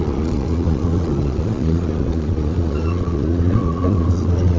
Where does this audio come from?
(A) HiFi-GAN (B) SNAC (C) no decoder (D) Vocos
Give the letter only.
D